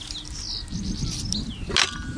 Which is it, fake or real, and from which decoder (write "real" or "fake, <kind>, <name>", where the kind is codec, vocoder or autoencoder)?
real